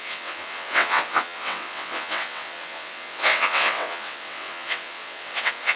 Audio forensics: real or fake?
fake